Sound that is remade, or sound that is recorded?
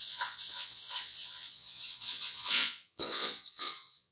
remade